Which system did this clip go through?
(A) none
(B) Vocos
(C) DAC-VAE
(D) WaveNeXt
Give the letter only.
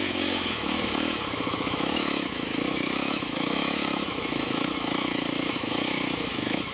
C